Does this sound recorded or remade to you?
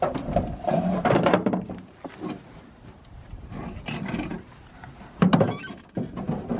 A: remade